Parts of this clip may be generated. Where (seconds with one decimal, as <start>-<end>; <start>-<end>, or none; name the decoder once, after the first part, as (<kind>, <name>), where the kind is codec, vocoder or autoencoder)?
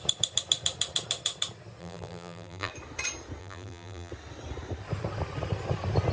1.8-2.7 (vocoder, BigVGAN v2); 3.4-4.1